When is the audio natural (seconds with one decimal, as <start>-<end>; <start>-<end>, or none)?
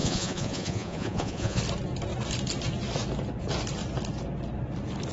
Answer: 1.6-5.1